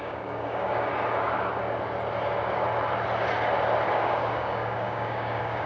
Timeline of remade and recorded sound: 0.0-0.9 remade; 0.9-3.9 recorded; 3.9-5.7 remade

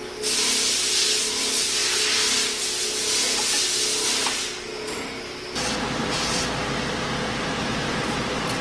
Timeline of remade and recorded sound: 0.0-8.6 recorded

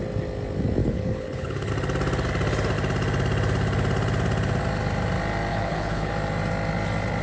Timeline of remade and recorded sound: 0.0-0.8 recorded; 0.8-1.7 remade; 1.7-5.5 recorded; 5.5-6.1 remade; 6.1-7.2 recorded

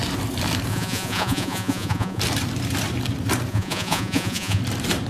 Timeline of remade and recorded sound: 0.0-0.7 recorded; 0.7-2.2 remade; 2.2-3.5 recorded; 3.5-4.6 remade; 4.6-5.1 recorded

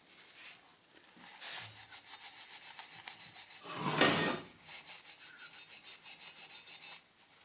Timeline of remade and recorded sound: 0.0-7.4 recorded